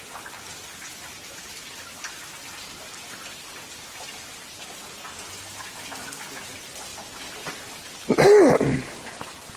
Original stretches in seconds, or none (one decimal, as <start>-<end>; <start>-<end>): 0.0-9.6